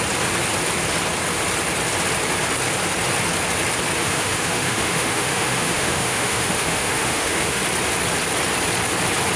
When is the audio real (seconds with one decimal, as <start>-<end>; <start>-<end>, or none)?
0.0-4.0; 7.6-9.4